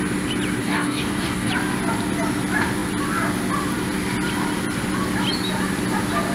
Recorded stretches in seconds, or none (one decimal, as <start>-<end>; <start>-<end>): 0.0-0.6; 1.5-6.3